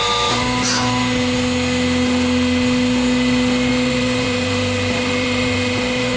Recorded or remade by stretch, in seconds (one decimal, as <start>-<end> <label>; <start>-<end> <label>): 0.0-3.7 recorded; 3.7-6.2 remade